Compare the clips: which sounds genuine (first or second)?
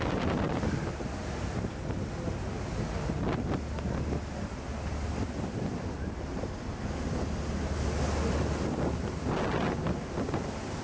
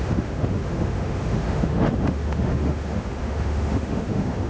first